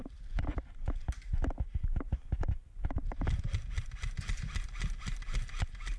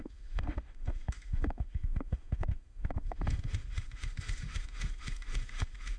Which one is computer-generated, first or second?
second